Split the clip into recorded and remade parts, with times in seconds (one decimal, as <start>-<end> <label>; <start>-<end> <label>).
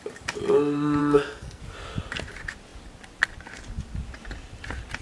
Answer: 0.0-1.0 recorded; 1.0-1.6 remade; 1.6-5.0 recorded